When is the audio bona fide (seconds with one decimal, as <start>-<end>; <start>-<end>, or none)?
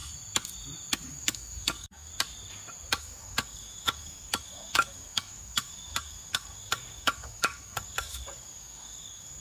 0.0-1.1; 2.1-3.0